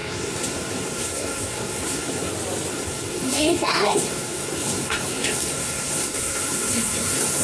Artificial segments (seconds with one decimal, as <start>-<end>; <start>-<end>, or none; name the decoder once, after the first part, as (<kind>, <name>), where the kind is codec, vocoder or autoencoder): 0.0-2.3 (codec, SNAC); 2.7-7.4